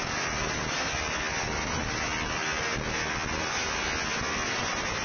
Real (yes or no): yes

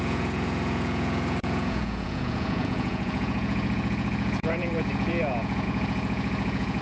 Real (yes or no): no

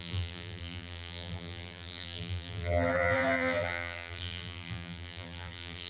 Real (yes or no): no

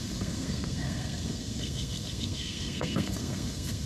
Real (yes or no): no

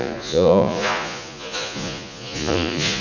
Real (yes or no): no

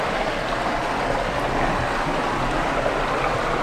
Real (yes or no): yes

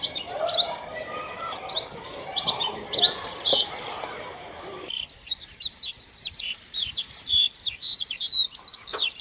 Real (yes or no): no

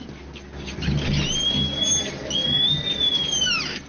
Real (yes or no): yes